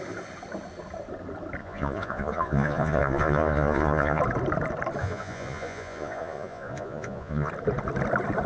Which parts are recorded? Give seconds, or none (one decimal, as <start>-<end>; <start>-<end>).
0.0-1.6; 4.2-5.0; 7.5-8.5